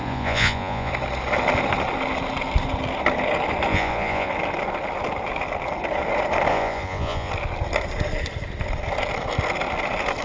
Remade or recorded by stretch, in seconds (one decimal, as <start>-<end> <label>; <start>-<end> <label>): 0.0-0.9 remade; 0.9-3.7 recorded; 3.7-4.3 remade; 4.3-6.5 recorded; 6.5-7.3 remade; 7.3-10.2 recorded